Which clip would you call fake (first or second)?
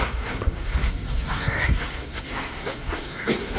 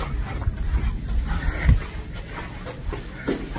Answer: first